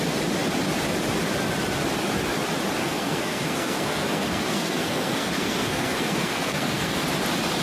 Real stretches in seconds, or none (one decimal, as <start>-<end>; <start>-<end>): 0.0-2.8; 7.0-7.6